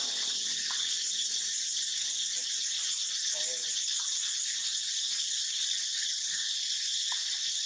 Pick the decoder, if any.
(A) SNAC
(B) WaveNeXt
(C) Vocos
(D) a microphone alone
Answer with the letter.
D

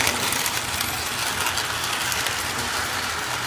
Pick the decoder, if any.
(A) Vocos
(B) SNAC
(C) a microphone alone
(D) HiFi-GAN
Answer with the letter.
C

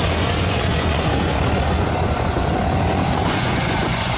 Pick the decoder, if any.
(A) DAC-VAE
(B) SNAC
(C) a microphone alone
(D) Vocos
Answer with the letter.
D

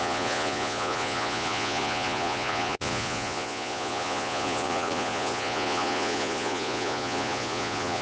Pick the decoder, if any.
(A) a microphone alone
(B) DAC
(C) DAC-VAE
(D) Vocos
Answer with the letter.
D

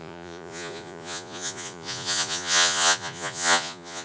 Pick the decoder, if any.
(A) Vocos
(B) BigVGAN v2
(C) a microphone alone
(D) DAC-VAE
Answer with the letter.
A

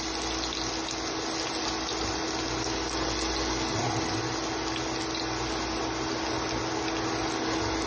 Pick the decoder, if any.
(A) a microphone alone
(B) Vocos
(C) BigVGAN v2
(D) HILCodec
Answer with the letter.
A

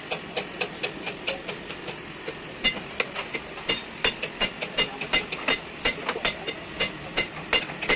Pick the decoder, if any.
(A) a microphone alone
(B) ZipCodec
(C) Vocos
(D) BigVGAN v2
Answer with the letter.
A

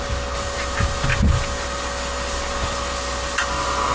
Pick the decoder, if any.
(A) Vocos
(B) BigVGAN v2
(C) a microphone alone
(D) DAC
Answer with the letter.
C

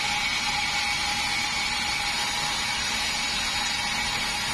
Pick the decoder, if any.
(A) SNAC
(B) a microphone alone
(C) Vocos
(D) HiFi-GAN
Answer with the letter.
B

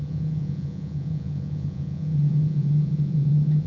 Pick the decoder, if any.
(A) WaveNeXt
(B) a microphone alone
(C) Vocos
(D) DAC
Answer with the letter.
C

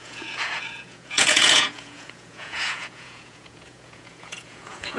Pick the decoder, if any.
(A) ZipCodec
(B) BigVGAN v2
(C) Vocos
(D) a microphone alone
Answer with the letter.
C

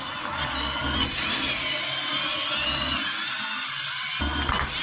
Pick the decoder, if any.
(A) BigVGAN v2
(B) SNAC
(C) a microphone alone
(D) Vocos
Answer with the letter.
C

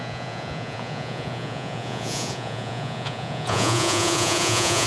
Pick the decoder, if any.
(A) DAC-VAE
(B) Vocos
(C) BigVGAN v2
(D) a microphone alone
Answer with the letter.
B